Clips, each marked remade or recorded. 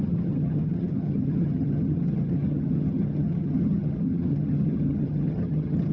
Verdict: remade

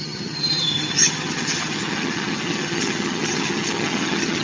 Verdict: remade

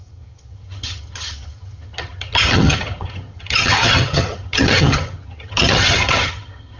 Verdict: remade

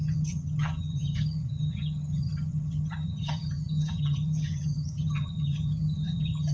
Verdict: remade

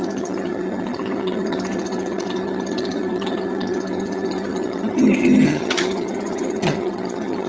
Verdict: remade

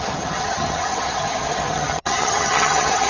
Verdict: remade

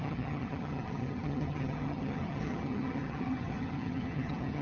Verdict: remade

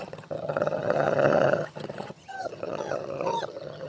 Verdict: remade